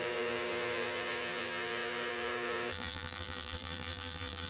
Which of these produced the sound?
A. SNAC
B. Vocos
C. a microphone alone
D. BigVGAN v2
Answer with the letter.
D